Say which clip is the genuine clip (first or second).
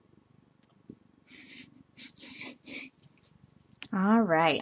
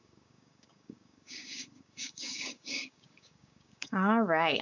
first